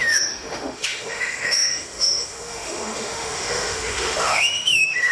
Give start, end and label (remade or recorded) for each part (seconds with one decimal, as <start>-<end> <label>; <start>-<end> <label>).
0.0-5.1 remade